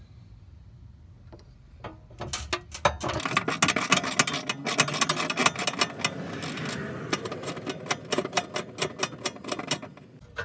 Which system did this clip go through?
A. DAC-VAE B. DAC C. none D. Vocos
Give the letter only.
C